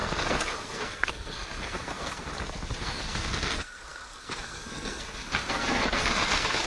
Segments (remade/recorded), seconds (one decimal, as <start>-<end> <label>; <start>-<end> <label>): 0.0-2.3 remade; 2.3-2.8 recorded; 2.8-6.7 remade